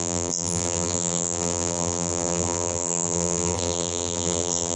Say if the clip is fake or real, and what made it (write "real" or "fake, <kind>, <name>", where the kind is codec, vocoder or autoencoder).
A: fake, vocoder, BigVGAN v2